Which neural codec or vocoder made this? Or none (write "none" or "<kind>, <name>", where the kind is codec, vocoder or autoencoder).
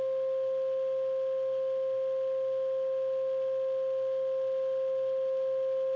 none